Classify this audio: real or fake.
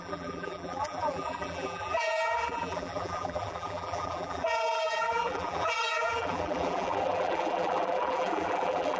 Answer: fake